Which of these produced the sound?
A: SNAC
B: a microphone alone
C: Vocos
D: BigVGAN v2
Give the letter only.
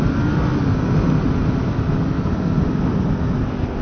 B